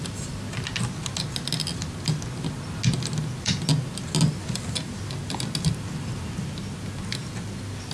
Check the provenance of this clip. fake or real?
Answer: real